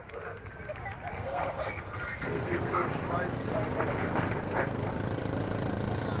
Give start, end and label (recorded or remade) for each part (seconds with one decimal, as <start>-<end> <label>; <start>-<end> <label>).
0.0-1.1 recorded; 1.1-2.9 remade; 2.9-4.0 recorded; 4.0-4.9 remade; 4.9-6.2 recorded